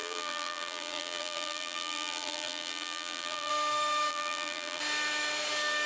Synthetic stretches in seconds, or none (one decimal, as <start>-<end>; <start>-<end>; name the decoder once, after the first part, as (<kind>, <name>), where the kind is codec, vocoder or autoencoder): 0.0-3.5 (vocoder, BigVGAN v2); 4.1-4.8